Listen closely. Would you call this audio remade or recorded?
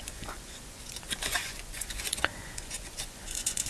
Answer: remade